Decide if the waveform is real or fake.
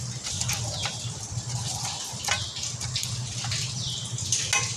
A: real